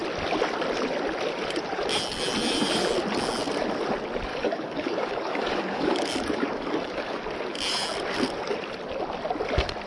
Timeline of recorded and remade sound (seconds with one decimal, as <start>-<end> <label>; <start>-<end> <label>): 0.0-4.3 recorded; 4.3-7.2 remade; 7.2-9.9 recorded